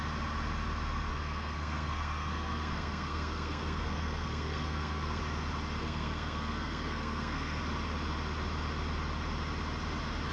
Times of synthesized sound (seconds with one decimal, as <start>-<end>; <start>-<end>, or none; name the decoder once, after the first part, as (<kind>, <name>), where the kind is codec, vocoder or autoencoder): 1.1-5.2 (codec, SNAC); 5.8-7.6